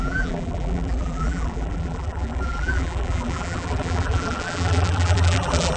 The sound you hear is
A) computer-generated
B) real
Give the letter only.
A